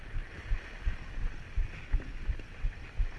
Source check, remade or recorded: recorded